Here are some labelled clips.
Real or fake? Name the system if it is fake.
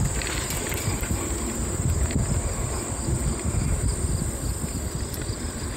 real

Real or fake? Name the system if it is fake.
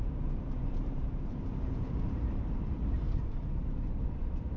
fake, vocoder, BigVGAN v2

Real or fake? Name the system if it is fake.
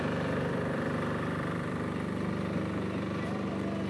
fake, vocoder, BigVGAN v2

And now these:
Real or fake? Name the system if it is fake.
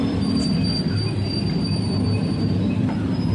fake, vocoder, BigVGAN v2